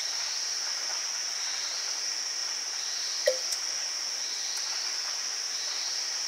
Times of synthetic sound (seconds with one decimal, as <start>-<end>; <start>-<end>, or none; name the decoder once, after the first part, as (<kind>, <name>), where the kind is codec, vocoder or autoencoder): none